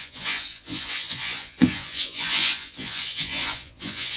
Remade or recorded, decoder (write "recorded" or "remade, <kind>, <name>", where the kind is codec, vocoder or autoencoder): remade, vocoder, Vocos